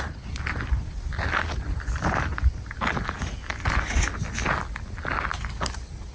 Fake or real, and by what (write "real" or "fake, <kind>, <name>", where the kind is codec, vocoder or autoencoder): real